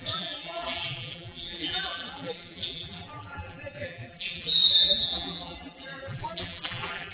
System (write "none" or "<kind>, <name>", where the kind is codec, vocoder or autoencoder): vocoder, BigVGAN v2